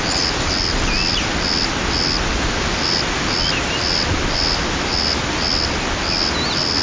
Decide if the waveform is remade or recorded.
recorded